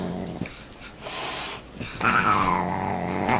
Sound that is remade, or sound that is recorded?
recorded